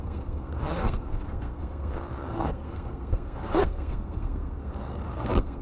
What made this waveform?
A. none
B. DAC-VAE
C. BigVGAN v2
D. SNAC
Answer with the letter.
D